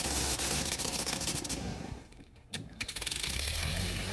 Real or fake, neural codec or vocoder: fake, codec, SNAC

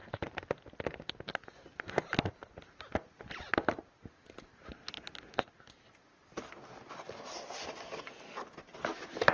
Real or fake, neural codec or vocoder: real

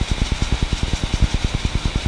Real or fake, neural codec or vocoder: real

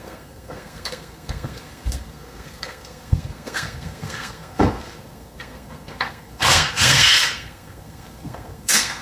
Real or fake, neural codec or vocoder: fake, codec, SNAC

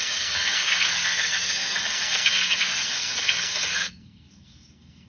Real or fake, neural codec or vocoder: fake, codec, SNAC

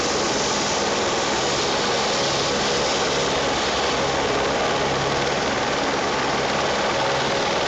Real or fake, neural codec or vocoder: real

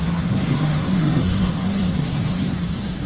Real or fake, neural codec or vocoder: fake, codec, SNAC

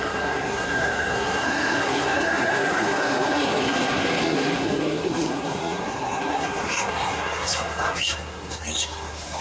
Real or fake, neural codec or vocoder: fake, codec, SNAC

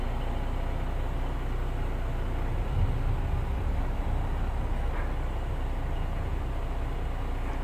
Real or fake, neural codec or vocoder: real